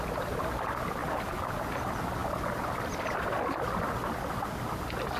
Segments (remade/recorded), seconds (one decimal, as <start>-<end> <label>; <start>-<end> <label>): 0.0-5.2 recorded